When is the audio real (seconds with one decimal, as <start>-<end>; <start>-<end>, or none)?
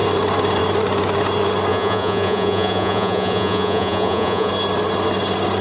0.0-1.7; 4.5-5.6